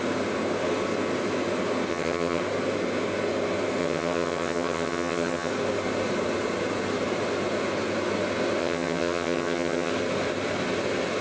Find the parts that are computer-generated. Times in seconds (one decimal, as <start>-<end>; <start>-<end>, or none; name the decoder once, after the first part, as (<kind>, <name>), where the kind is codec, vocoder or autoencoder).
1.9-2.4 (vocoder, HiFi-GAN); 3.8-5.5; 8.6-9.9